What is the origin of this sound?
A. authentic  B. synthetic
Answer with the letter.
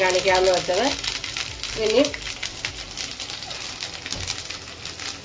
A